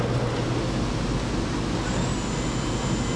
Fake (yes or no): no